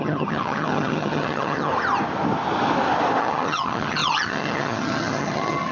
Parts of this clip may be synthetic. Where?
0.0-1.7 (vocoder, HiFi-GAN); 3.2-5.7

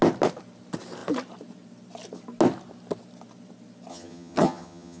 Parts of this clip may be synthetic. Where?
3.9-5.0 (vocoder, HiFi-GAN)

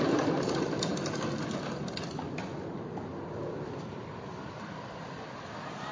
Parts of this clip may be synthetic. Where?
none

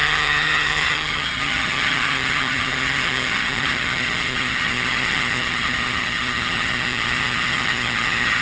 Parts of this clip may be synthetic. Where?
0.0-8.4 (vocoder, HiFi-GAN)

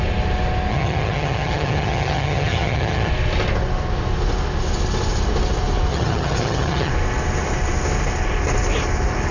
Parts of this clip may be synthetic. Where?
0.7-3.1 (vocoder, HiFi-GAN); 5.9-6.9